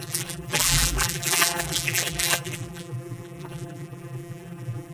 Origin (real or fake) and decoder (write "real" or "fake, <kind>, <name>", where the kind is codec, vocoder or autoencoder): fake, vocoder, BigVGAN v2